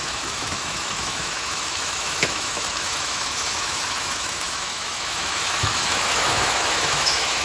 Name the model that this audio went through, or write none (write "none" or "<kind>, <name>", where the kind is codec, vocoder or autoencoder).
autoencoder, DAC-VAE